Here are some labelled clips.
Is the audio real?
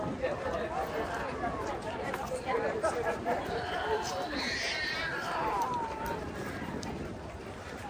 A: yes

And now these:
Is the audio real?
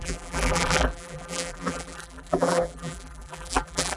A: no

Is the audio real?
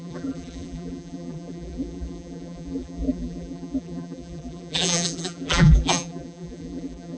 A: no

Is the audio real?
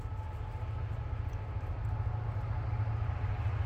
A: yes